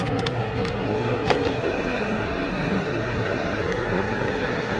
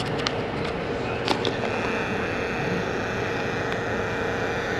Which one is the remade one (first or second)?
first